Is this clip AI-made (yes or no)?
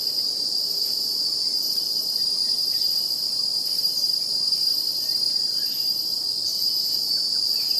yes